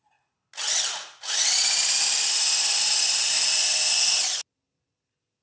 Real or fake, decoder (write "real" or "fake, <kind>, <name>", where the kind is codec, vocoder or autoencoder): real